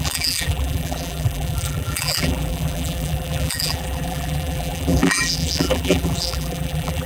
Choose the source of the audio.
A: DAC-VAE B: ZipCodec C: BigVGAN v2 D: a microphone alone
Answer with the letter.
C